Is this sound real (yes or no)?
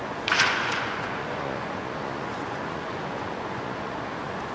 no